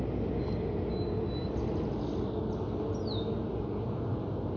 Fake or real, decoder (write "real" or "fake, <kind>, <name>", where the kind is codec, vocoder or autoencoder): real